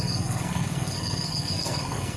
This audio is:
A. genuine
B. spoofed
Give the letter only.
B